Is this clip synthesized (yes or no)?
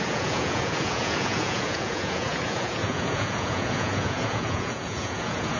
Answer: yes